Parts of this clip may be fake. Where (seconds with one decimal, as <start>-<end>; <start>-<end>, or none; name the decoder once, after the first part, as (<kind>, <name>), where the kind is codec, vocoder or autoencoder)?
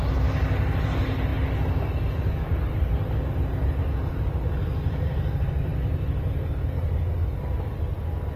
none